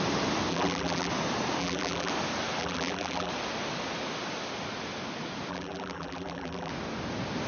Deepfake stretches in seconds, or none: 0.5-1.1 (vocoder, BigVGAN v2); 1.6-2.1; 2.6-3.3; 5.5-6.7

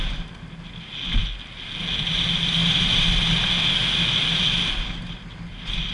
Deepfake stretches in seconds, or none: none